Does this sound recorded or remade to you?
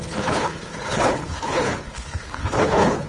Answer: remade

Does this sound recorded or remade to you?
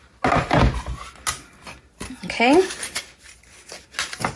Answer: recorded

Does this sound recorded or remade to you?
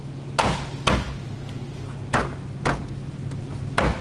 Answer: recorded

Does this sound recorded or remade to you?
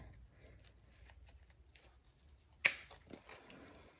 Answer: recorded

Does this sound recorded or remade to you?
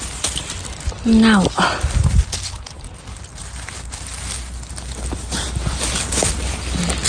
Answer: recorded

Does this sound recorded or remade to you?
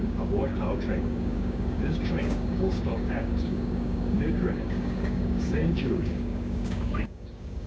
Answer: remade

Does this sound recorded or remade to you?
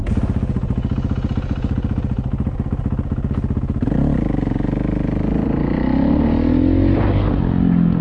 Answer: recorded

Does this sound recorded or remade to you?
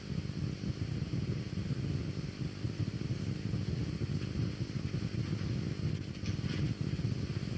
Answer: recorded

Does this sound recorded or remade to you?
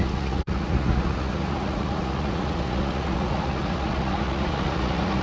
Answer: remade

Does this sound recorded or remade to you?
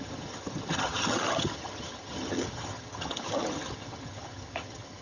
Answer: remade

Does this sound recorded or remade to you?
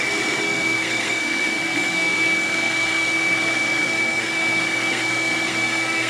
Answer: remade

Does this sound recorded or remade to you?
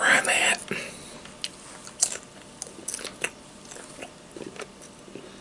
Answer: recorded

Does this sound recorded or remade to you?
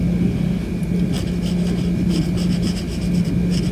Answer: recorded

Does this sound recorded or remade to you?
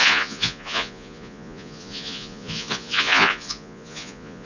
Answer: remade